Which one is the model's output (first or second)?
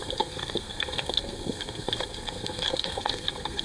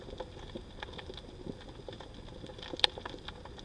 first